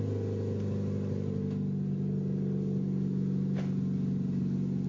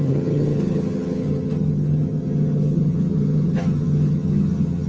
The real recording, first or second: first